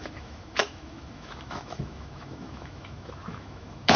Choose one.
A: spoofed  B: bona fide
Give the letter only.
A